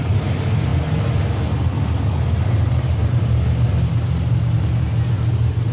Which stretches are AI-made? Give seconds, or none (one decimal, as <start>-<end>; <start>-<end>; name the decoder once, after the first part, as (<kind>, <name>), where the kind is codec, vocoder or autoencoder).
none